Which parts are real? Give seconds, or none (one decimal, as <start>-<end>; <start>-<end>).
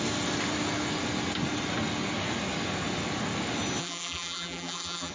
0.0-3.8